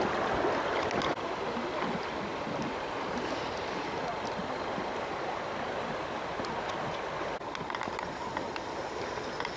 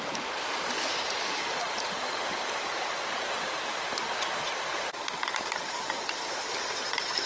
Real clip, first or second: first